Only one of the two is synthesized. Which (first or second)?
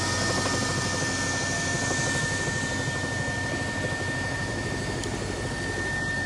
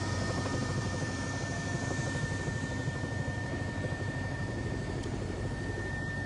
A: second